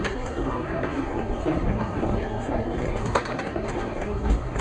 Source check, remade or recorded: remade